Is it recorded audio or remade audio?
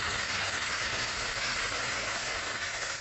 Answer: remade